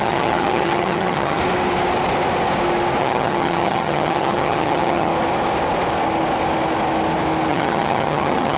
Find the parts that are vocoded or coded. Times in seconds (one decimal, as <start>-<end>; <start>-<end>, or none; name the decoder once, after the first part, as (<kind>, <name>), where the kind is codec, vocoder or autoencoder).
0.0-1.4 (vocoder, HiFi-GAN); 3.0-5.1; 7.5-8.6